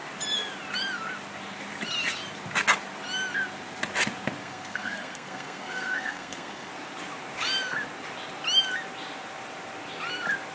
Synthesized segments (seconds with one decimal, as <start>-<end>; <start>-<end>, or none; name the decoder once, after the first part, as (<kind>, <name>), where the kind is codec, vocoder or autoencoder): 4.4-6.7 (codec, SNAC)